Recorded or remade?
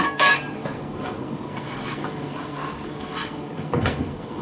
remade